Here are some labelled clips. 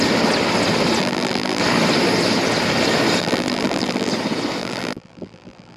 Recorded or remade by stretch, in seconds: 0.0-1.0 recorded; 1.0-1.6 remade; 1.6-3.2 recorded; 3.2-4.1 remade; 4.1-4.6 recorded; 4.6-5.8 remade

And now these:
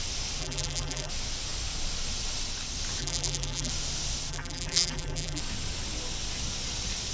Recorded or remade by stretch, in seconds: 0.0-0.4 recorded; 0.4-1.1 remade; 1.1-3.0 recorded; 3.0-3.7 remade; 3.7-4.3 recorded; 4.3-5.4 remade; 5.4-7.1 recorded

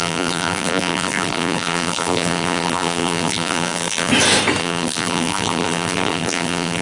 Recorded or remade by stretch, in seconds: 0.0-4.1 remade; 4.1-4.6 recorded; 4.6-6.8 remade

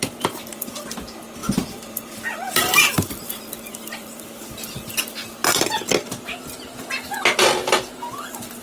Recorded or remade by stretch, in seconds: 0.0-0.5 recorded; 0.5-1.0 remade; 1.0-1.4 recorded; 1.4-4.9 remade; 4.9-8.6 recorded

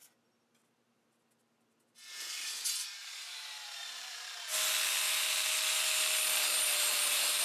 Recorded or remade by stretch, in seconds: 0.0-2.7 recorded; 2.7-4.5 remade; 4.5-6.4 recorded; 6.4-7.4 remade